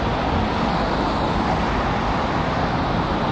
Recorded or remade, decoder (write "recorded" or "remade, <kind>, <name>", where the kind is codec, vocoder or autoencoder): recorded